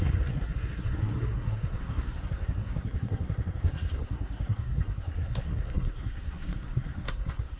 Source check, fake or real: fake